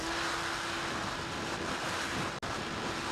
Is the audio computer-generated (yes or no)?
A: no